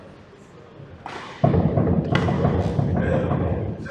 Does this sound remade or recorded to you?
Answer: recorded